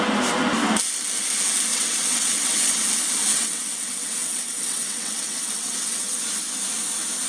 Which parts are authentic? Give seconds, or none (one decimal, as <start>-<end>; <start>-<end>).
0.0-1.7; 2.8-3.3; 6.2-7.3